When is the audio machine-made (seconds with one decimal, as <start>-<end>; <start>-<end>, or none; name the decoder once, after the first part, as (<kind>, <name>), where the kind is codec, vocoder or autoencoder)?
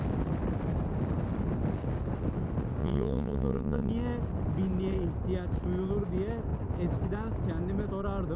2.8-3.9 (vocoder, WaveNeXt)